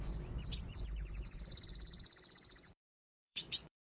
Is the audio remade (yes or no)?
yes